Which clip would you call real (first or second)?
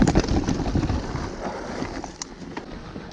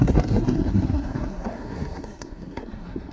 first